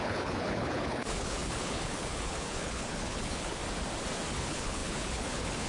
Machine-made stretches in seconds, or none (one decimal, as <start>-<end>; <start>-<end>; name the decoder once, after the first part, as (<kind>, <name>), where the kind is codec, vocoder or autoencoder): 0.0-3.6 (codec, HILCodec); 4.3-5.7